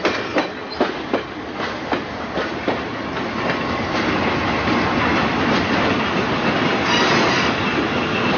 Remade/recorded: recorded